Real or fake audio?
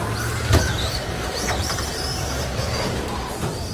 fake